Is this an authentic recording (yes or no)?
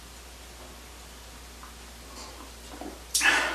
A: yes